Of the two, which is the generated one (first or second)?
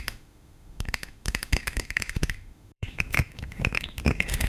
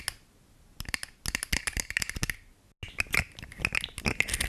first